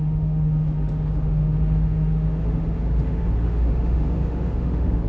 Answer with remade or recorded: remade